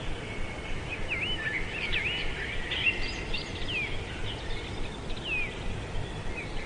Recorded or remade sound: recorded